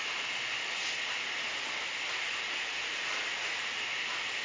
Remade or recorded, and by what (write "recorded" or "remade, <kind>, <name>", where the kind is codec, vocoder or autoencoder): recorded